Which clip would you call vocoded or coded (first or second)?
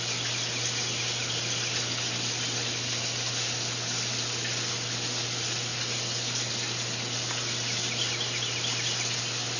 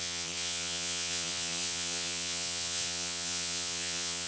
second